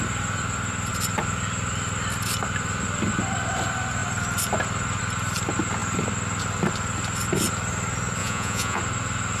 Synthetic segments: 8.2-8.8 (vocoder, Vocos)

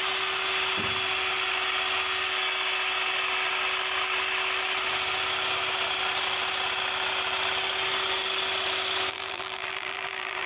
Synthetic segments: 9.1-10.5 (vocoder, BigVGAN v2)